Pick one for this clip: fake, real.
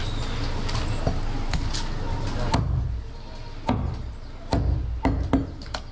real